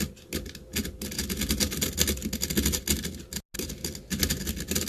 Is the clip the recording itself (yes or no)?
yes